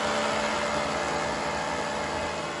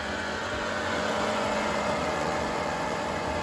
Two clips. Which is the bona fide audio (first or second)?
first